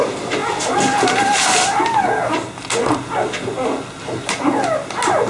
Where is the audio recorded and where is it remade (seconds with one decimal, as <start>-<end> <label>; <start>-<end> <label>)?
0.0-5.3 recorded